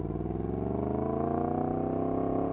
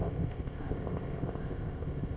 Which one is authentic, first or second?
first